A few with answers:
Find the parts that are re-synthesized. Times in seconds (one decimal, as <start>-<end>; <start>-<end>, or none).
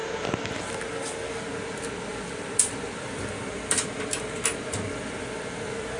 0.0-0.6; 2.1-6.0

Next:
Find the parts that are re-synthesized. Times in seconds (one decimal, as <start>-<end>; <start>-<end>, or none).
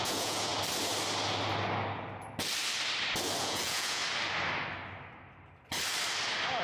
0.0-0.5; 3.4-4.0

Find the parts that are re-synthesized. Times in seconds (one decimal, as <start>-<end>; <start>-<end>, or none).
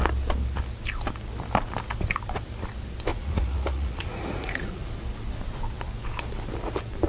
3.1-4.9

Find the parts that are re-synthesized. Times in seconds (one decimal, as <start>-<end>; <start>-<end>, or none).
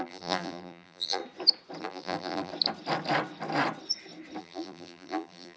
0.0-1.2; 1.8-2.5; 4.4-5.6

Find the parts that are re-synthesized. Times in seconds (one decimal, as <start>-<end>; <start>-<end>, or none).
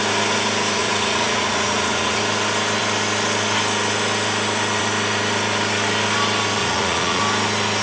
0.8-2.2; 6.6-7.2